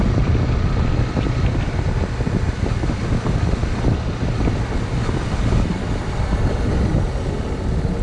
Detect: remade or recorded recorded